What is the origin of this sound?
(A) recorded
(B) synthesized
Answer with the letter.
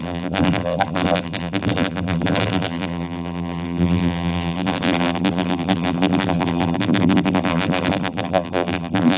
B